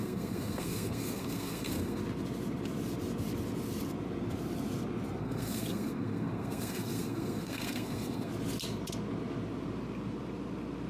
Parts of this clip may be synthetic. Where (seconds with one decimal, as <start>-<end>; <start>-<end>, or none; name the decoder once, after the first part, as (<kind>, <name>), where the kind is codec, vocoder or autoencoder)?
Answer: 0.0-2.0 (codec, SNAC); 5.2-8.3